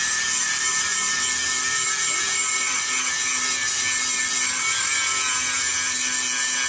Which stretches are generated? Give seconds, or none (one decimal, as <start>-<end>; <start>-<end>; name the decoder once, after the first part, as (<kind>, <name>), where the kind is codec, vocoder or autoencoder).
none